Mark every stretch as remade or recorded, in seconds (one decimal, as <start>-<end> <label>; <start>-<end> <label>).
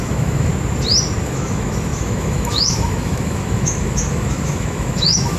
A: 0.0-0.5 remade; 0.5-1.2 recorded; 1.2-5.4 remade